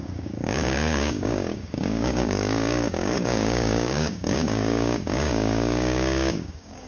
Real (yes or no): no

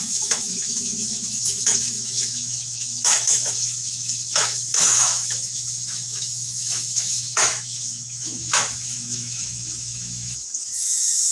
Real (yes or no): no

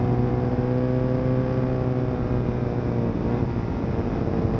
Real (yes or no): yes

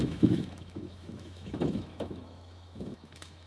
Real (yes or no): no